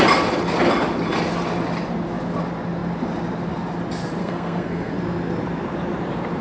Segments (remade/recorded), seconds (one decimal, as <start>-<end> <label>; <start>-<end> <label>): 0.0-4.2 recorded; 4.2-4.9 remade; 4.9-6.4 recorded